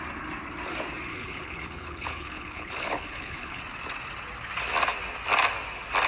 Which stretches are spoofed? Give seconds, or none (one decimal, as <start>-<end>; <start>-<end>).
1.1-3.6